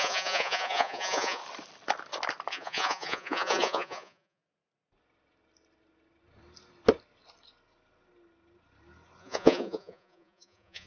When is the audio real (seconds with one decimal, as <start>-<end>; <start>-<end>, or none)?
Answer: 1.4-2.5; 4.4-9.2